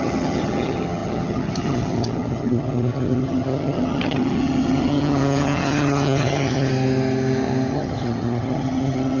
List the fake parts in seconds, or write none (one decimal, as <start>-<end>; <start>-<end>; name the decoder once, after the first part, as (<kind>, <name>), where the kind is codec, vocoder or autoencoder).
0.0-6.7 (vocoder, HiFi-GAN); 7.7-9.2